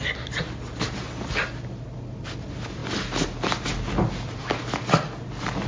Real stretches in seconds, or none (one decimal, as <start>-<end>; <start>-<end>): 0.0-5.7